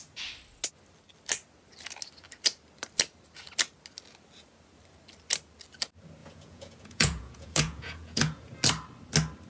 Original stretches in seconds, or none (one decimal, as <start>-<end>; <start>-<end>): 0.0-6.2; 8.5-9.5